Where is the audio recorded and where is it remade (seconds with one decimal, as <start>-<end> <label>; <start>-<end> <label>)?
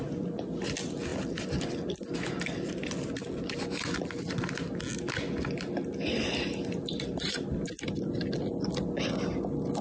0.0-9.8 recorded